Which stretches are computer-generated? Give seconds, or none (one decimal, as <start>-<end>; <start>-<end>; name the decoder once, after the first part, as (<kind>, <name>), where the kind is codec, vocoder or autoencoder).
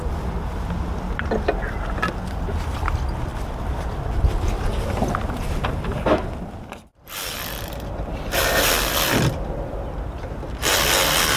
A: 8.1-8.7 (vocoder, BigVGAN v2)